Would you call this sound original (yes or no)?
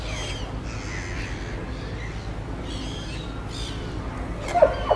yes